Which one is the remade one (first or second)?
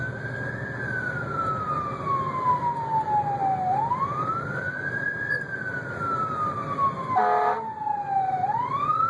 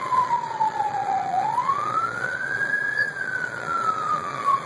second